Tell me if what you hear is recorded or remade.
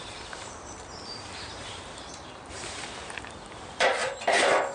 remade